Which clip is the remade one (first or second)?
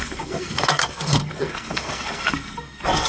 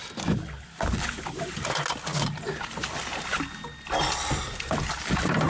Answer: first